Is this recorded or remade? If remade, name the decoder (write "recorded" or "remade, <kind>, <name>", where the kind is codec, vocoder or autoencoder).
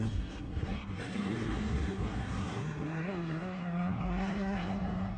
remade, codec, SNAC